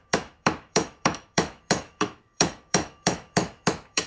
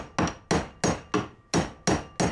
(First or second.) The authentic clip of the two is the second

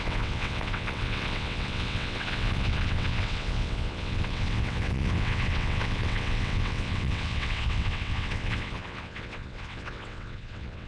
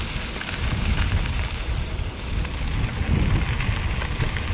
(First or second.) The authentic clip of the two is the second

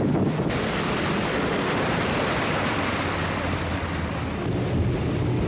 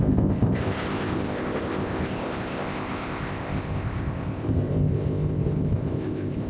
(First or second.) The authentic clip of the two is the first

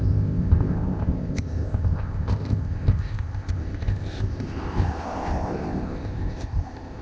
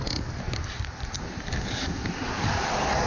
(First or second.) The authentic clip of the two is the second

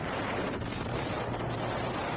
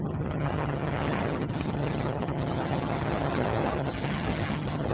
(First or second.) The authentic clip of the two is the first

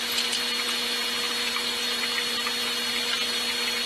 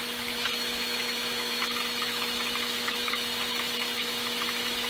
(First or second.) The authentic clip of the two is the first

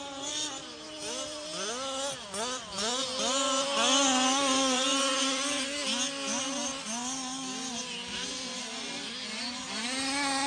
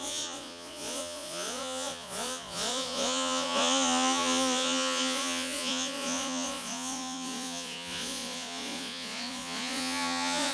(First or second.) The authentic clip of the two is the first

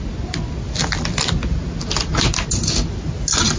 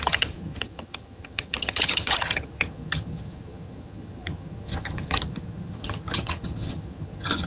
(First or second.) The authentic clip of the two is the first